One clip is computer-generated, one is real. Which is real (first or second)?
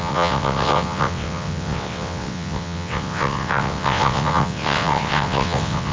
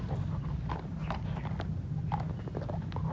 second